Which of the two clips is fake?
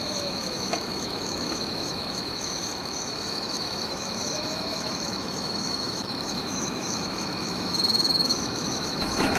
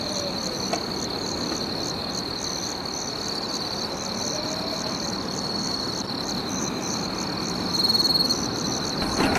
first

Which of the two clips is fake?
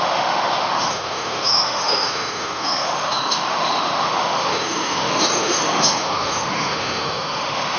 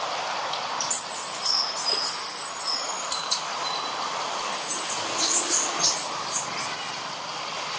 first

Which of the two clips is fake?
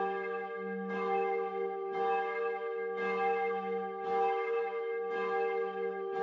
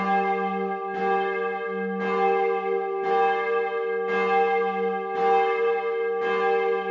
first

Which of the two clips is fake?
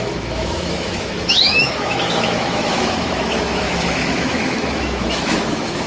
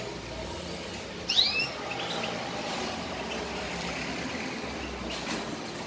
first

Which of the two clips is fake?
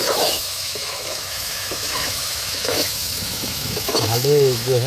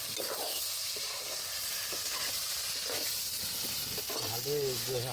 first